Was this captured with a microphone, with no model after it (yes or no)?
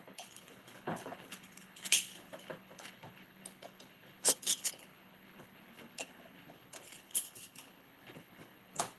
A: no